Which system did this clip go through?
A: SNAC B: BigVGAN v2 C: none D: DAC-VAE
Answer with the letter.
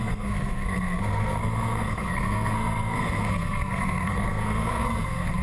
A